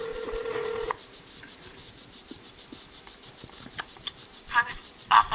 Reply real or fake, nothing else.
fake